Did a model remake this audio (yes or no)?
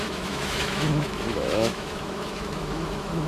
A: yes